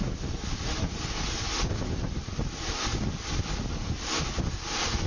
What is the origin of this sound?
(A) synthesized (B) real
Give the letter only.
B